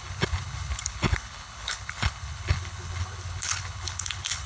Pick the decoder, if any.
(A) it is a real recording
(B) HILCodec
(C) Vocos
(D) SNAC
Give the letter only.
B